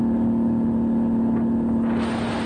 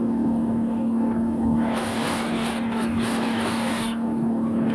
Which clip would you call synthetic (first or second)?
second